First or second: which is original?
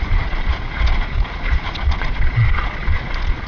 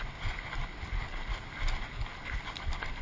second